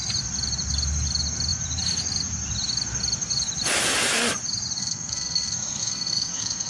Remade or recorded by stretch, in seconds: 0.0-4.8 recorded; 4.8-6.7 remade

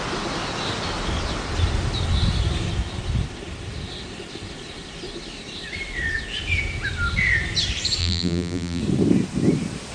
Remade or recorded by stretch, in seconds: 0.0-8.0 recorded; 8.0-8.8 remade; 8.8-9.9 recorded